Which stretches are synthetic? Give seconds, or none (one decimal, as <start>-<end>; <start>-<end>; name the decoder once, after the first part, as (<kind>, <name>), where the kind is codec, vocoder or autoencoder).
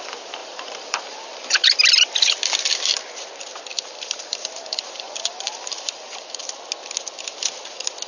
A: 0.4-1.8 (vocoder, BigVGAN v2); 3.7-6.4